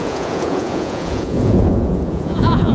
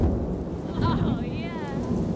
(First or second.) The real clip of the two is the second